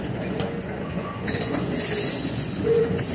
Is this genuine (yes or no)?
no